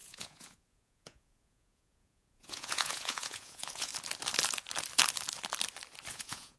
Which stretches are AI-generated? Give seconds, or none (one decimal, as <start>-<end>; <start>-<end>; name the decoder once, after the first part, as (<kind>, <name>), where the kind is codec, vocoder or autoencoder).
0.0-3.9 (vocoder, Vocos); 6.1-6.6